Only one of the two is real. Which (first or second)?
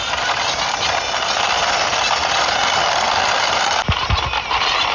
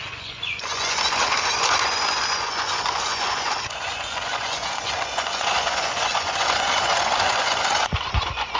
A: first